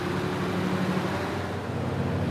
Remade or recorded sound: recorded